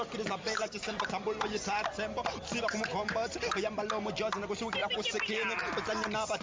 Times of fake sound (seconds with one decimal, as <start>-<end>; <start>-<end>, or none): none